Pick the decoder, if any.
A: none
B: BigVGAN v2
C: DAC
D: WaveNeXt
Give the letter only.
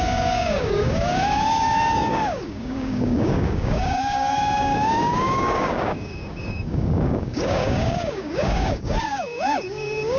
C